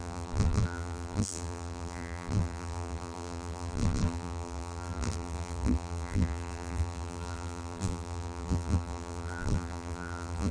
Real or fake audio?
fake